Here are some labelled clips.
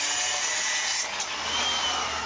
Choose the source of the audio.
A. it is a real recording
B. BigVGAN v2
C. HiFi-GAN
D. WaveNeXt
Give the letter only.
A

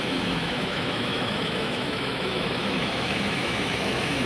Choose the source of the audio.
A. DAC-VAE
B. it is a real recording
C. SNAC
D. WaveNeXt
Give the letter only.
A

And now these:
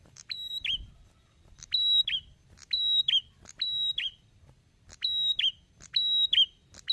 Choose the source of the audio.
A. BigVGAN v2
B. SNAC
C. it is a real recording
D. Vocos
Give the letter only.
C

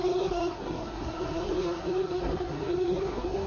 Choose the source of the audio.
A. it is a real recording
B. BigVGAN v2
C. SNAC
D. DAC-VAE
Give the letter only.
C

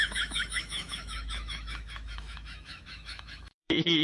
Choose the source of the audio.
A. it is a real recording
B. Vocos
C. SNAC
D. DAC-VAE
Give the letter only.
D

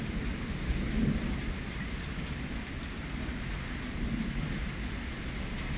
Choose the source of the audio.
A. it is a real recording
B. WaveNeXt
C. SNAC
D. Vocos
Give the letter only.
A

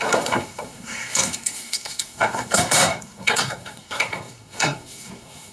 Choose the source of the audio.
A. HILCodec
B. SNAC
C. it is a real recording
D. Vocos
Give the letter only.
B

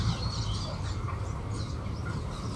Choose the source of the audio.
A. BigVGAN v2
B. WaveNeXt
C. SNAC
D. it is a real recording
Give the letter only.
A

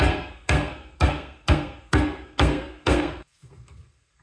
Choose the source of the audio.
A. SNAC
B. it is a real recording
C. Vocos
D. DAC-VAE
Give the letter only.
A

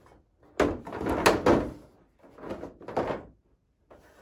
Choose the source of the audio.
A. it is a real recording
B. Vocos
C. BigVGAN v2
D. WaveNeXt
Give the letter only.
A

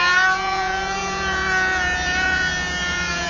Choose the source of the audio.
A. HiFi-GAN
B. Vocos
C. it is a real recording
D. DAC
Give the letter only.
B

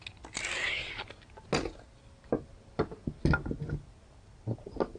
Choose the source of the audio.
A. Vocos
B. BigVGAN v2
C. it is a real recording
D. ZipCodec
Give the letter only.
C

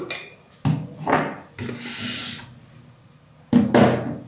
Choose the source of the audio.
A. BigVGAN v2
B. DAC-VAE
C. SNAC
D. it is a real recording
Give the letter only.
D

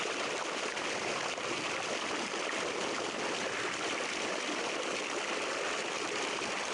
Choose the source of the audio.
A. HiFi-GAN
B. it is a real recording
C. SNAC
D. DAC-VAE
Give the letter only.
B